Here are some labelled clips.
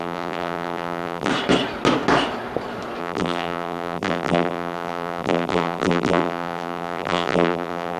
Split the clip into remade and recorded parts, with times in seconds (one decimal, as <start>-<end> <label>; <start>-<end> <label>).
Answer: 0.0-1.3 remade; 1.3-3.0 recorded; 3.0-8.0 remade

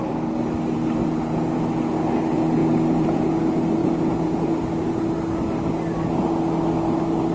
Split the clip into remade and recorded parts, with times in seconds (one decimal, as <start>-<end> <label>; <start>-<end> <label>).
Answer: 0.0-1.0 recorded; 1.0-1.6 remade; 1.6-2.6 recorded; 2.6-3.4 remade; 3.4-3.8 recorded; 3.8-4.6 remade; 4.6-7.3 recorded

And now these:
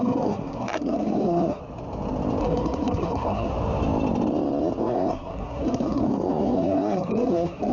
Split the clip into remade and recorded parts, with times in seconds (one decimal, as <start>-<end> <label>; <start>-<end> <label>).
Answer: 0.0-1.6 remade; 1.6-2.4 recorded; 2.4-3.5 remade; 3.5-4.8 recorded; 4.8-7.7 remade